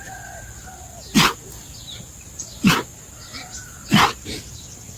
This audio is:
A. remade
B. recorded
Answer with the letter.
B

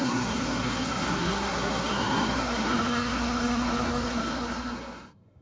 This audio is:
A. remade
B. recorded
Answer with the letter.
A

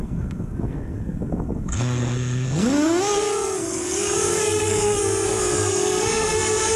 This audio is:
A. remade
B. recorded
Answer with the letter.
A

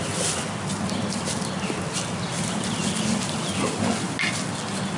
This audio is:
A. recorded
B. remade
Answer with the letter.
A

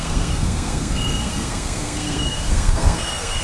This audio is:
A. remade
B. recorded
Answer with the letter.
A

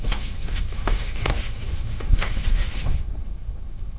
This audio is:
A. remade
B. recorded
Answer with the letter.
A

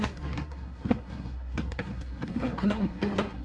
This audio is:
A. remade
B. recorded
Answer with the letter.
A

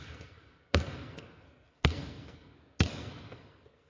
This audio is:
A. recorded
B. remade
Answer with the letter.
B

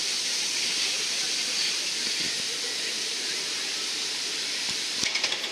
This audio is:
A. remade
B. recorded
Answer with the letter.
B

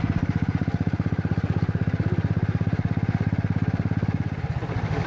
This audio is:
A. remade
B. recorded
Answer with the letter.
B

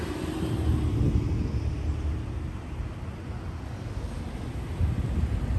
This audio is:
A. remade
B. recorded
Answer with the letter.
B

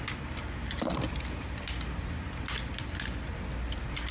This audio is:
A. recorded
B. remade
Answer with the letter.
A